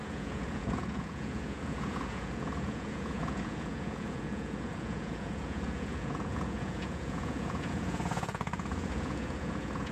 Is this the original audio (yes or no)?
no